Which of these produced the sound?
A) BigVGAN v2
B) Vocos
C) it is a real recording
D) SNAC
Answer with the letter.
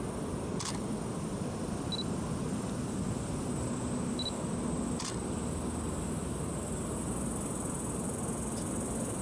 C